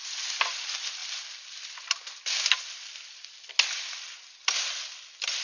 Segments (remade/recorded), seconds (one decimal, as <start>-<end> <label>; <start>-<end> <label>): 0.0-5.4 recorded